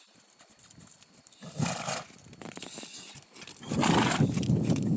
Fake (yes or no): no